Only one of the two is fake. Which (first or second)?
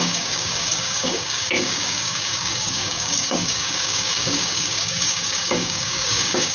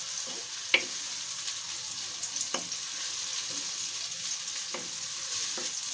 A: first